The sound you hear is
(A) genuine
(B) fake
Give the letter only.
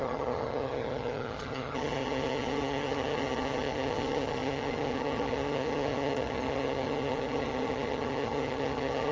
B